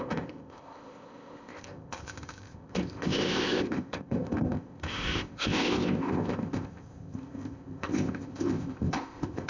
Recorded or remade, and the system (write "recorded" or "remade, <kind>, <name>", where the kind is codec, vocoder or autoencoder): remade, codec, ZipCodec